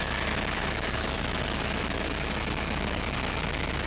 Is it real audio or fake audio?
fake